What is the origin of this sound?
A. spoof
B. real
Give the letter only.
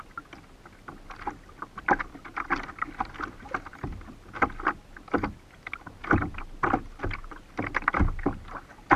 B